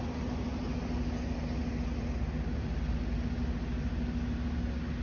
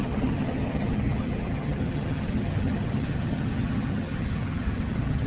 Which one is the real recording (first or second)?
first